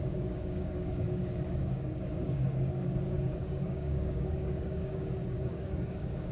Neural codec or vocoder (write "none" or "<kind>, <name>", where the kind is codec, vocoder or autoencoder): codec, DAC